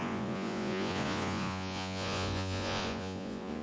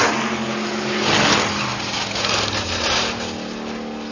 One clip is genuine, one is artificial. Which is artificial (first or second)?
first